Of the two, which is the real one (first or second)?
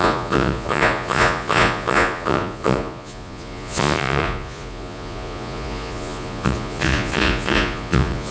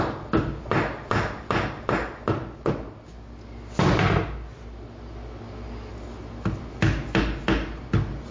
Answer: second